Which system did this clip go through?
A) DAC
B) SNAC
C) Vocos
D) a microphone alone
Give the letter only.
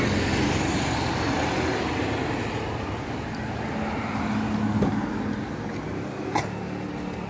D